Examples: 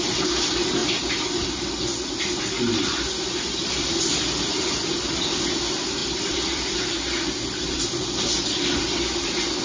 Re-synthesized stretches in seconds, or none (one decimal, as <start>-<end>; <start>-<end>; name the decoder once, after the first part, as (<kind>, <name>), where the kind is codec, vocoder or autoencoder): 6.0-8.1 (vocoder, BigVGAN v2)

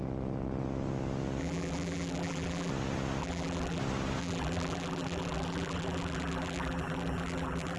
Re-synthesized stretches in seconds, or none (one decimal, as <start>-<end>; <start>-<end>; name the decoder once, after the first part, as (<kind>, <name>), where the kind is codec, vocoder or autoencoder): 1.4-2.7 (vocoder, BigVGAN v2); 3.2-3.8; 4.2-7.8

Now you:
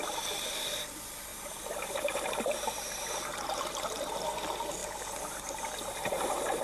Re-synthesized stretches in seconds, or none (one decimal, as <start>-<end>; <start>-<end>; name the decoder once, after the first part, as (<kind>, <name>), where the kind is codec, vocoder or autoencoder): 1.3-2.1 (vocoder, BigVGAN v2); 3.3-4.2; 4.8-6.6